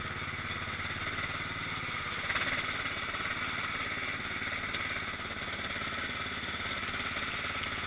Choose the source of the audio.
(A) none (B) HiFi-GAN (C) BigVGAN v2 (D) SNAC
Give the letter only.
A